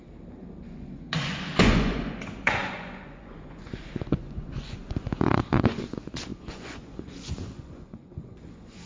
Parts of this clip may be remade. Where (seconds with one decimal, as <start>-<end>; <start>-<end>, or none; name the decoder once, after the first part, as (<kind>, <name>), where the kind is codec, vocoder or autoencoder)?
0.6-8.9 (vocoder, Vocos)